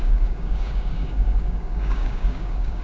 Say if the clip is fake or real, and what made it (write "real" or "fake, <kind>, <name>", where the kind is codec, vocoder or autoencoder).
fake, codec, DAC